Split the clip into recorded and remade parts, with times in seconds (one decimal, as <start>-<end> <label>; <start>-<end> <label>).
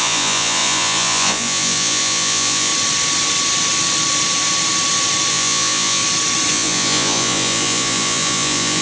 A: 0.0-2.7 remade; 2.7-5.3 recorded; 5.3-6.0 remade; 6.0-6.5 recorded; 6.5-8.8 remade